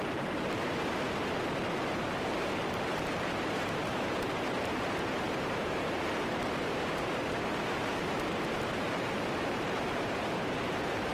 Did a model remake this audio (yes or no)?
yes